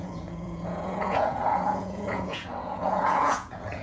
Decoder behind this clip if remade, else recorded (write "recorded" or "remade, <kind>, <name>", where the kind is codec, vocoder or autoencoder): remade, vocoder, Vocos